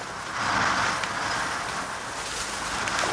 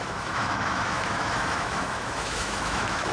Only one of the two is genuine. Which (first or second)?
first